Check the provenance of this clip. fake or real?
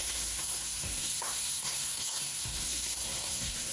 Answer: fake